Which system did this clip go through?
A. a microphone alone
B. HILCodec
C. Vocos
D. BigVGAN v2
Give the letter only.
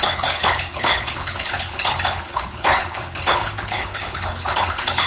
B